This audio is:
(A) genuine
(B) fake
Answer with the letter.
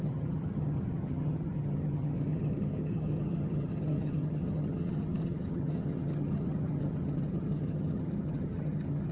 B